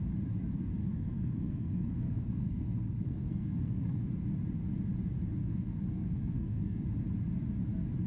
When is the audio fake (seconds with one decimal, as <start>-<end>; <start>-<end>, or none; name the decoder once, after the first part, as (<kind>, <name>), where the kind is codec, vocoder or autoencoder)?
0.8-4.0 (codec, SNAC); 5.4-6.8